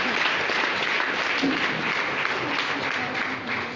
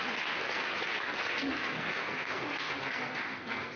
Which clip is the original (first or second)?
first